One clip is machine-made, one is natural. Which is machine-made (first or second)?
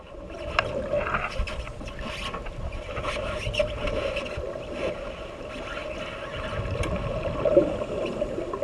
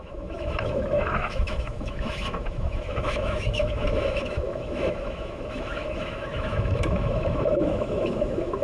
second